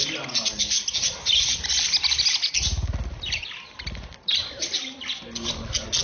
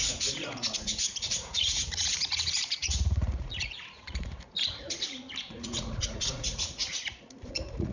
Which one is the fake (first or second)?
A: second